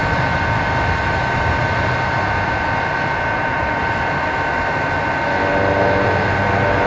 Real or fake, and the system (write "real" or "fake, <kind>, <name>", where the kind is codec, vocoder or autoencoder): real